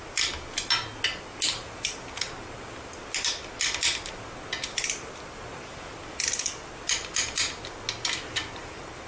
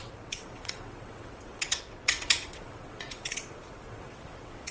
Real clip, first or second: first